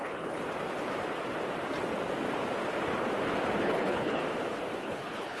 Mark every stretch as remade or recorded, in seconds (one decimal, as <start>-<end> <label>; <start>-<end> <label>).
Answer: 0.0-0.4 remade; 0.4-3.6 recorded; 3.6-4.2 remade; 4.2-4.8 recorded; 4.8-5.4 remade